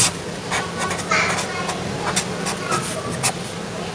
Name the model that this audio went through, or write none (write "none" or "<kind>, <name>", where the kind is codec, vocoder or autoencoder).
none